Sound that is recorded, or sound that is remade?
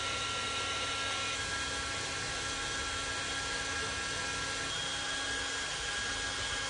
recorded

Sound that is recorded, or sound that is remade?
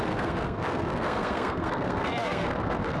remade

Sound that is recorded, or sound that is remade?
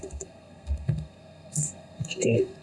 remade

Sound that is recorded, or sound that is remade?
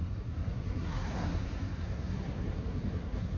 remade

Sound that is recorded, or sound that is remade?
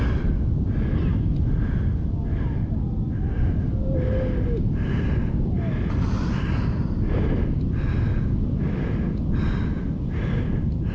recorded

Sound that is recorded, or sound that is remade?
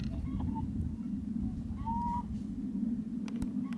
recorded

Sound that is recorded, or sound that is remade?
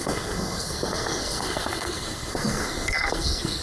remade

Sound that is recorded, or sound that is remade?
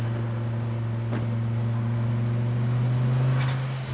recorded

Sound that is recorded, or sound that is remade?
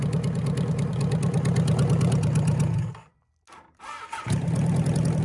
recorded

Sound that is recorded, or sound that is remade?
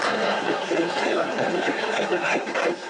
remade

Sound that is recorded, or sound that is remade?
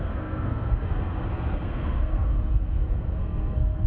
remade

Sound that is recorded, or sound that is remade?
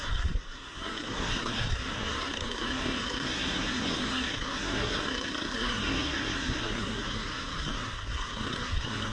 remade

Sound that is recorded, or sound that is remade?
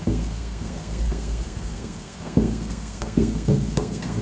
remade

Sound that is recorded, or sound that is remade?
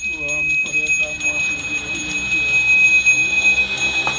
recorded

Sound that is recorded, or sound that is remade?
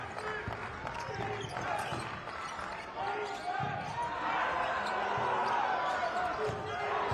recorded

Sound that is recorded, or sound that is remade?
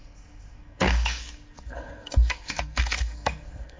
remade